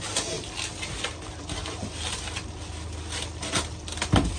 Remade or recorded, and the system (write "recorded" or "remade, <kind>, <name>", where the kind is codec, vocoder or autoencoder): recorded